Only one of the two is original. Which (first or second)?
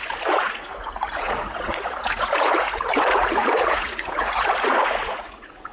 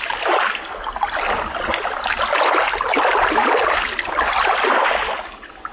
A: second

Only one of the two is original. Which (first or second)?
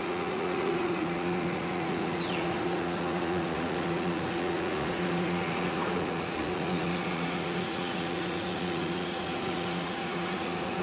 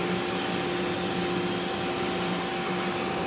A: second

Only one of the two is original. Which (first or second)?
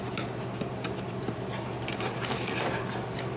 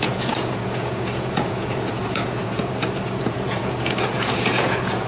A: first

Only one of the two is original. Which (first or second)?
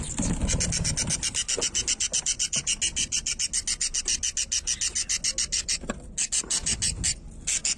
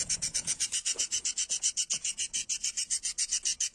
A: first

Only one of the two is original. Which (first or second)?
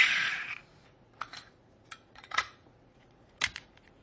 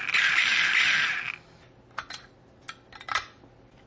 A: second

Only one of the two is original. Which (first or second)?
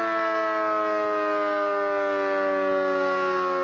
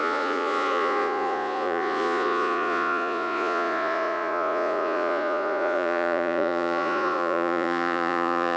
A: first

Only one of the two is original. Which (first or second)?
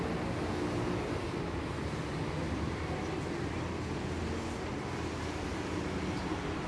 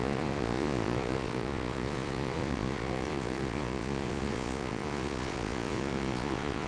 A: first